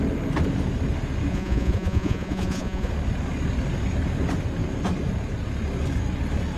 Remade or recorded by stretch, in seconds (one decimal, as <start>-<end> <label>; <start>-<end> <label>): 0.0-1.3 recorded; 1.3-2.9 remade; 2.9-6.6 recorded